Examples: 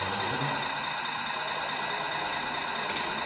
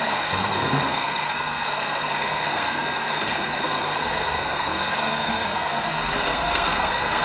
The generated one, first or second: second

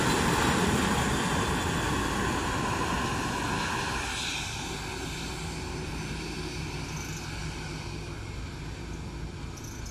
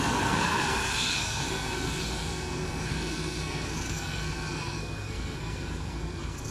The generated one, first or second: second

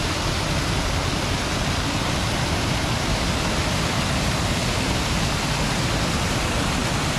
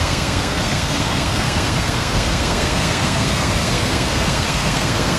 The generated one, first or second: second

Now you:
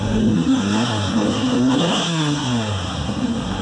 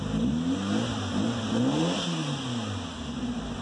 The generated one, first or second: first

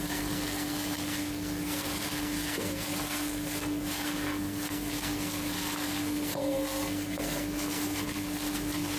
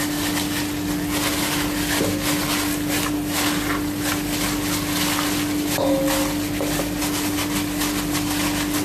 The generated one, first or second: first